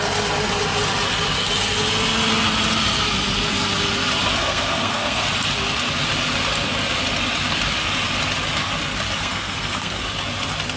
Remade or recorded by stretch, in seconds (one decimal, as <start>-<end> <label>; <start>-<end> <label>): 0.0-4.4 recorded; 4.4-5.2 remade; 5.2-9.2 recorded; 9.2-10.0 remade; 10.0-10.8 recorded

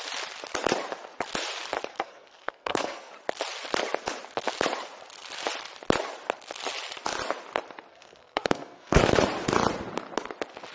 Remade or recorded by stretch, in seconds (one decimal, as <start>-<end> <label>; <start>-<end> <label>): 0.0-1.9 recorded; 1.9-3.1 remade; 3.1-7.9 recorded; 7.9-9.0 remade; 9.0-10.7 recorded

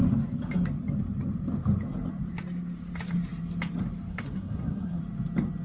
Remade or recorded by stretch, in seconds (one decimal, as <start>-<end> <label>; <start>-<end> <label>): 0.0-4.1 recorded; 4.1-5.0 remade; 5.0-5.6 recorded

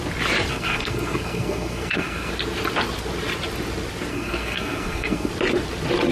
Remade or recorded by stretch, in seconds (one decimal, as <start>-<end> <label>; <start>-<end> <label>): 0.0-0.5 recorded; 0.5-2.3 remade; 2.3-4.1 recorded; 4.1-5.3 remade; 5.3-6.1 recorded

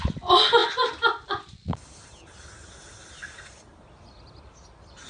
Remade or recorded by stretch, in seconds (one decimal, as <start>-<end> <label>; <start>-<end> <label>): 0.0-5.1 recorded

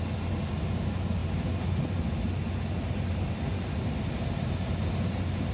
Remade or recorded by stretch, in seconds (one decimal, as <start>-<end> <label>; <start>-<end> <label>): 0.0-5.5 recorded

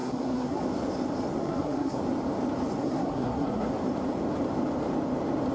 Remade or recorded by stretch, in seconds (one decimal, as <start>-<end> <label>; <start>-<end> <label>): 0.0-0.6 remade; 0.6-1.4 recorded; 1.4-2.0 remade; 2.0-2.8 recorded; 2.8-3.7 remade; 3.7-5.5 recorded

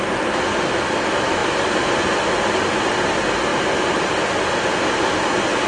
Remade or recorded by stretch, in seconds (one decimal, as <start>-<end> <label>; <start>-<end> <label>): 0.0-5.7 recorded